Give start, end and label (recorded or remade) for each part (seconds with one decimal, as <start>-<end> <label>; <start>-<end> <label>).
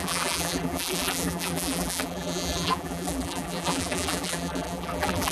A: 0.0-5.3 remade